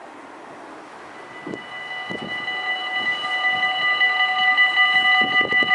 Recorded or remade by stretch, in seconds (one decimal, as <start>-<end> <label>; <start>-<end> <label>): 0.0-5.7 recorded